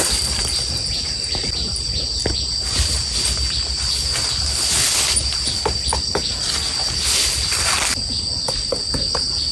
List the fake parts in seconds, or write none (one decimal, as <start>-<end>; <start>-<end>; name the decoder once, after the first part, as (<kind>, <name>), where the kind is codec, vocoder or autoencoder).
none